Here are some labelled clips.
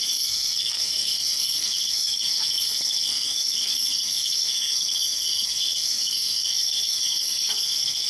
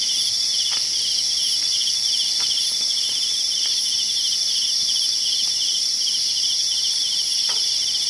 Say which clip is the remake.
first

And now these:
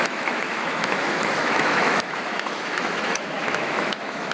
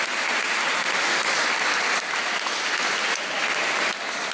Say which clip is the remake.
first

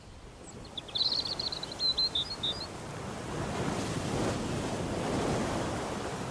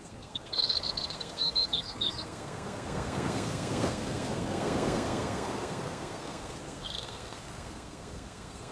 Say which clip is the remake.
second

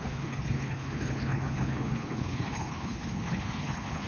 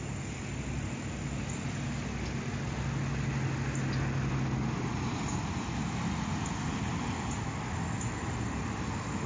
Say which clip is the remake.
first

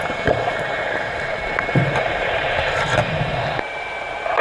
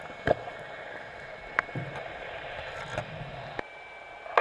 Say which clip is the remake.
first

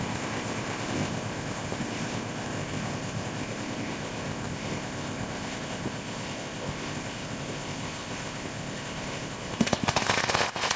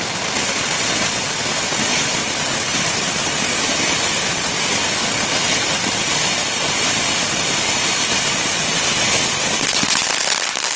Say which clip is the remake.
first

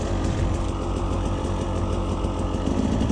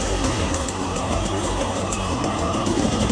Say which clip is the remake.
second